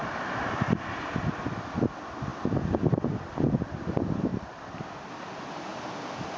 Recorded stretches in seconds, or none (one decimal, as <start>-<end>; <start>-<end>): 1.1-4.3; 5.1-6.4